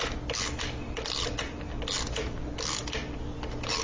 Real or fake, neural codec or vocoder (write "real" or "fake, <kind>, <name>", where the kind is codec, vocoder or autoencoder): real